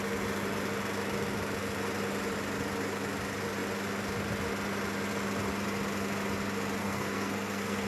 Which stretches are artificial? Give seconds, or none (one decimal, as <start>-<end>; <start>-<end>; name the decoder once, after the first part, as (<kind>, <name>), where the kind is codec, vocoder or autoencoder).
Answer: 6.8-7.9 (codec, SNAC)